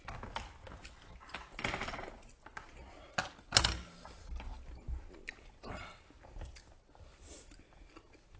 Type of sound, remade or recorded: recorded